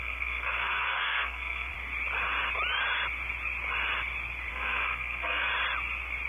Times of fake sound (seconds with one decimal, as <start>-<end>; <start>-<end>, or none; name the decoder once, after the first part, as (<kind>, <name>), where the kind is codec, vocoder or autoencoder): 0.0-1.7 (codec, SNAC); 4.5-5.5